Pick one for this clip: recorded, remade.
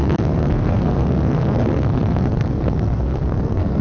remade